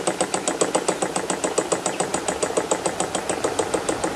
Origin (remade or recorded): recorded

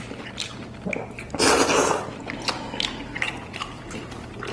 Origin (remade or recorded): remade